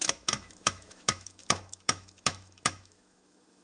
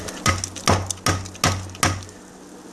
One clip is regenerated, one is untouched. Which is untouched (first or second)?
second